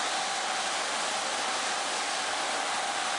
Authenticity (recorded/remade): recorded